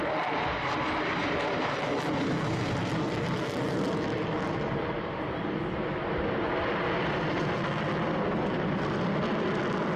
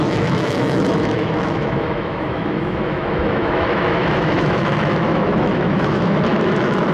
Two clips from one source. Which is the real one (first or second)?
first